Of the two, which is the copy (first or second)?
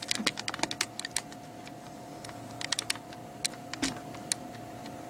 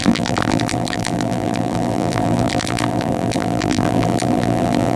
second